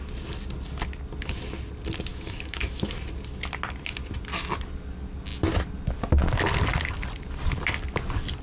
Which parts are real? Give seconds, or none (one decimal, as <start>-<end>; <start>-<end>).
0.0-2.1; 2.9-8.4